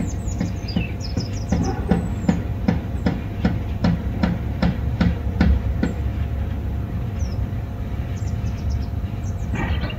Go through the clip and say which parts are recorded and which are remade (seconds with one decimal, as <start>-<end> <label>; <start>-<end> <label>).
0.0-6.1 remade; 6.1-6.9 recorded; 6.9-10.0 remade